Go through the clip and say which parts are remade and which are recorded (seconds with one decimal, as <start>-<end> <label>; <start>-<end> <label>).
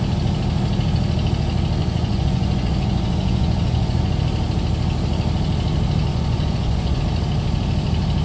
0.0-1.8 recorded; 1.8-4.1 remade; 4.1-6.1 recorded; 6.1-7.0 remade; 7.0-8.2 recorded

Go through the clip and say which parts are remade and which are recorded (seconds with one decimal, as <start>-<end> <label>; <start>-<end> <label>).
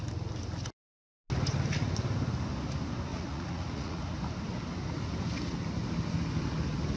0.0-3.1 recorded; 3.1-4.0 remade; 4.0-7.0 recorded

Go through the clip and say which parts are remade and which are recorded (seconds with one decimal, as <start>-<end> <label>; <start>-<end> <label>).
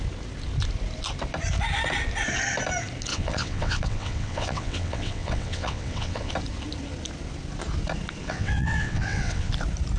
0.0-3.1 recorded; 3.1-6.3 remade; 6.3-8.2 recorded; 8.2-9.5 remade; 9.5-10.0 recorded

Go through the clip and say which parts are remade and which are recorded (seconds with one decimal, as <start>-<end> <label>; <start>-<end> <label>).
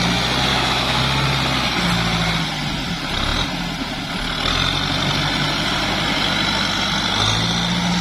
0.0-0.5 recorded; 0.5-1.0 remade; 1.0-8.0 recorded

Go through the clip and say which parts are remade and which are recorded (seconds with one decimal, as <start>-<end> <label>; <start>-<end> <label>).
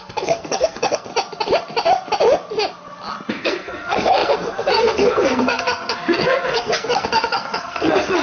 0.0-1.1 remade; 1.1-3.3 recorded; 3.3-8.2 remade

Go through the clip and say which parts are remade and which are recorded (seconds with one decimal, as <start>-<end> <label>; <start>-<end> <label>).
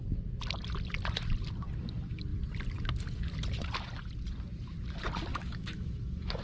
0.0-5.3 recorded; 5.3-6.4 remade